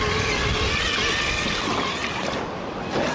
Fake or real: real